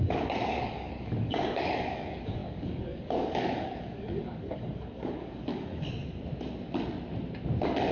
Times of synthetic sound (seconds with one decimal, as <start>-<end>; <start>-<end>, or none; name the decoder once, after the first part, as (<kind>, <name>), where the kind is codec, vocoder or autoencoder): 0.0-6.0 (codec, DAC)